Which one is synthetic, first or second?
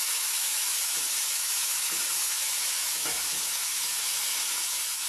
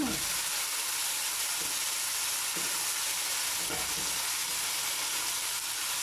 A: first